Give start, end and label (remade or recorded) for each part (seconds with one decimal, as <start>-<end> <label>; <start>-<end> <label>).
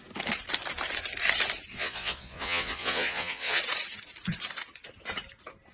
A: 0.0-1.7 recorded; 1.7-3.6 remade; 3.6-5.7 recorded